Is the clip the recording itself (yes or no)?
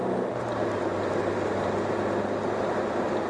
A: yes